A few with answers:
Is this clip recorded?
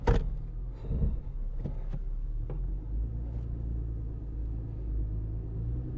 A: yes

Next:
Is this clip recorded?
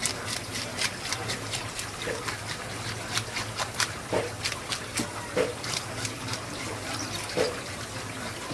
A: yes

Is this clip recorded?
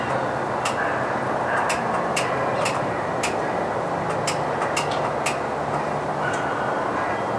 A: yes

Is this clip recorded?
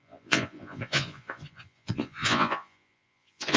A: no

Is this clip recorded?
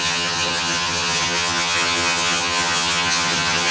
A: no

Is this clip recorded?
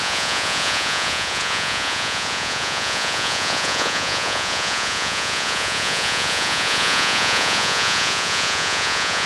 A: no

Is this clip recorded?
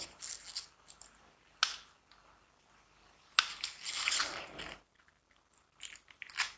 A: yes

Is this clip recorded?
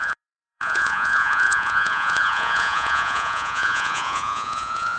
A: no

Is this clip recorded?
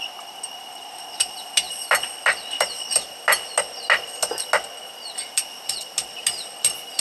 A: yes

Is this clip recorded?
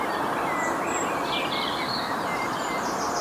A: yes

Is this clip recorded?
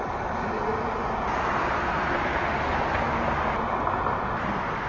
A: yes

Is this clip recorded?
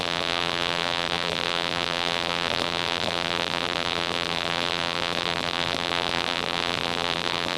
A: no